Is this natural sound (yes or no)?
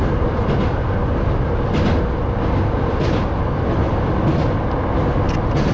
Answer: yes